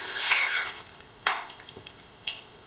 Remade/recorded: remade